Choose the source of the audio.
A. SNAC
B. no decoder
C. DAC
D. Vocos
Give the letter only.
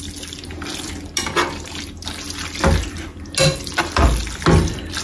B